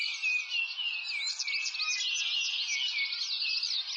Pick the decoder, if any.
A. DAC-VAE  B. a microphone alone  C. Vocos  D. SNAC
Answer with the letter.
B